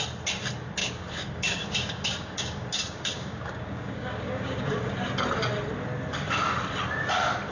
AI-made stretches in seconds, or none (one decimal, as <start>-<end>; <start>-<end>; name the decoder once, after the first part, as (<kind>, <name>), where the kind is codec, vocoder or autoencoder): 0.8-4.9 (codec, DAC)